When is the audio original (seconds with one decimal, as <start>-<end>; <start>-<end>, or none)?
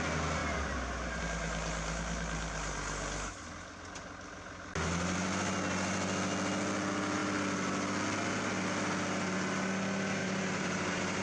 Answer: 0.0-0.4; 1.2-10.2